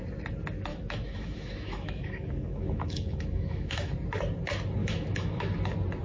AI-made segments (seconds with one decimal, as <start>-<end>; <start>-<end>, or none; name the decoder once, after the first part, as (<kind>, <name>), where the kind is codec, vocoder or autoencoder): 0.7-3.9 (autoencoder, DAC-VAE); 4.8-5.5